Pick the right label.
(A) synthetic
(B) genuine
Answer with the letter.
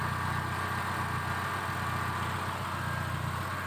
B